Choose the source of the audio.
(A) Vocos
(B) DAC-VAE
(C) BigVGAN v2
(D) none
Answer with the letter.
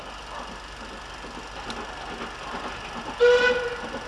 D